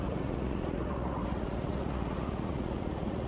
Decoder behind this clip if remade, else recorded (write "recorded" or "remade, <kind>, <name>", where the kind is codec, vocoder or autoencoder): remade, vocoder, Vocos